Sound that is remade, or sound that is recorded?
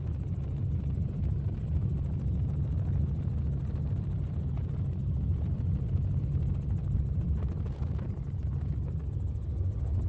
recorded